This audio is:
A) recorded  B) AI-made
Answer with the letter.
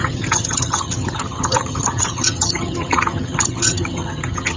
B